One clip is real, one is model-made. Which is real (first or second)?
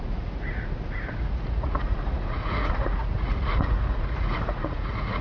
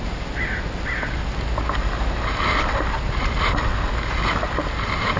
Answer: second